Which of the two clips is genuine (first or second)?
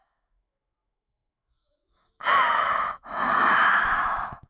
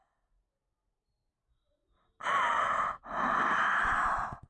second